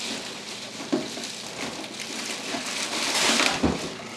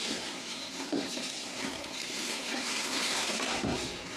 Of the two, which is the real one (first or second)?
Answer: first